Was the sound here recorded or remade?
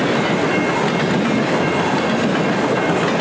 recorded